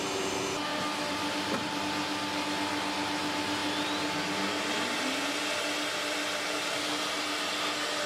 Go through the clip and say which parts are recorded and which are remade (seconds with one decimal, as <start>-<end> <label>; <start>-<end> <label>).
0.0-0.7 recorded; 0.7-1.8 remade; 1.8-8.1 recorded